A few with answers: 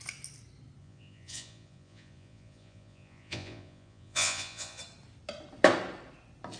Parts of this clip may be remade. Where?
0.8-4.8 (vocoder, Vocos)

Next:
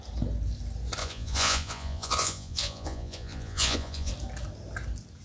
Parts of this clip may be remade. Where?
1.0-4.1 (vocoder, Vocos)

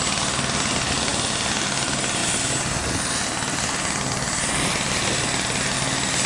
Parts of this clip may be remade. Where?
none

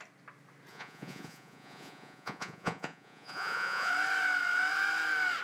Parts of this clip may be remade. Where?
0.7-3.9 (vocoder, Vocos)

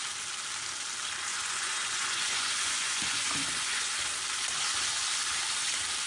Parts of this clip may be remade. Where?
1.3-3.9 (vocoder, Vocos)

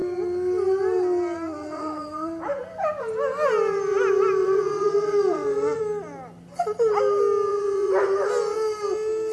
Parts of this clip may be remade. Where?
1.6-2.6 (vocoder, Vocos); 4.4-5.8; 7.5-8.3